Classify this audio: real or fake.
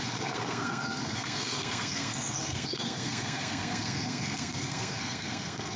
fake